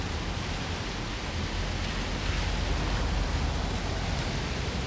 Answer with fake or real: real